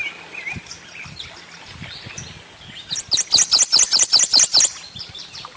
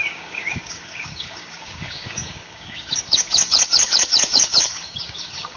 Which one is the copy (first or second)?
second